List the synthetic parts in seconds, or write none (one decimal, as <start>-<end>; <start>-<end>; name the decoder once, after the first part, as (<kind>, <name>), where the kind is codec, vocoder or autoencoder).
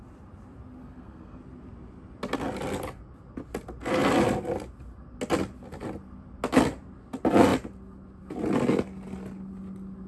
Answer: 0.8-1.4 (codec, SNAC)